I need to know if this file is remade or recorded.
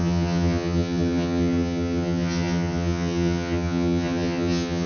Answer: remade